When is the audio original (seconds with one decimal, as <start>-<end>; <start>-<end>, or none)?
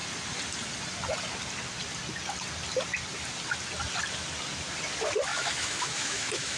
0.0-5.3